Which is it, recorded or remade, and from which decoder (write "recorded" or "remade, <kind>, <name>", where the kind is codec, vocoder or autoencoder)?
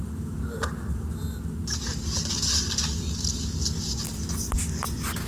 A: recorded